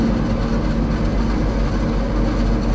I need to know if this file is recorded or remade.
recorded